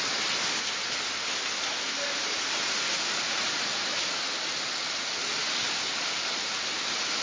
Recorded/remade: recorded